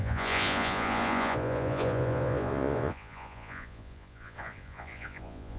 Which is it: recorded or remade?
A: remade